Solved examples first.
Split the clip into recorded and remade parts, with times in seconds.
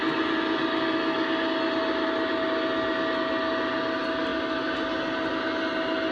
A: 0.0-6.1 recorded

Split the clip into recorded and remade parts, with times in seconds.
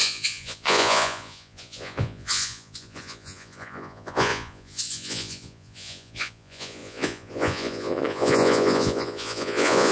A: 0.0-9.9 remade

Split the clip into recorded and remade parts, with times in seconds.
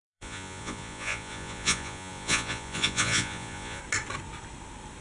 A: 0.0-3.8 remade; 3.8-5.0 recorded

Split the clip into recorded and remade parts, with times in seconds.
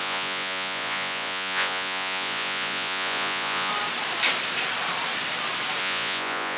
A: 0.0-3.7 remade; 3.7-5.8 recorded; 5.8-6.6 remade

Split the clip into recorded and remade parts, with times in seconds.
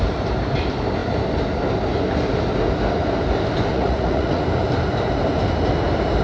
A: 0.0-3.7 recorded; 3.7-4.4 remade; 4.4-6.2 recorded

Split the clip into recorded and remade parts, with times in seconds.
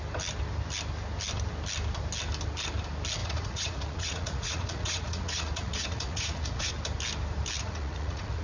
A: 0.0-3.2 recorded; 3.2-6.7 remade; 6.7-7.6 recorded; 7.6-8.4 remade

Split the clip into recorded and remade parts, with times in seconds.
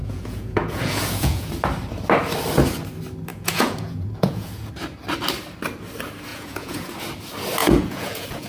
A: 0.0-1.5 remade; 1.5-3.3 recorded; 3.3-4.7 remade; 4.7-6.3 recorded; 6.3-6.9 remade; 6.9-7.6 recorded; 7.6-8.5 remade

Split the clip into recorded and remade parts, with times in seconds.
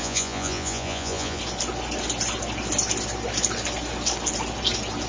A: 0.0-1.4 remade; 1.4-5.1 recorded